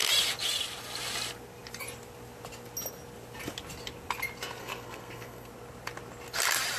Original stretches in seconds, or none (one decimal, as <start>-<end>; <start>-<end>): 0.0-4.6; 5.5-6.8